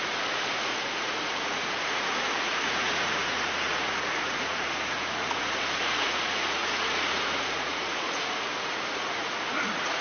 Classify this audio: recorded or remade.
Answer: remade